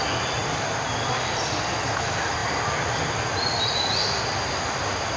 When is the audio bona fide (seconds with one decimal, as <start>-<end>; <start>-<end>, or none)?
0.0-5.2